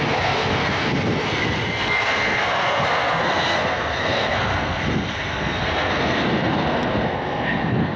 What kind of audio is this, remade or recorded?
remade